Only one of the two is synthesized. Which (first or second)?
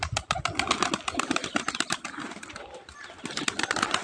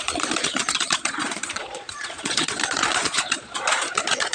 second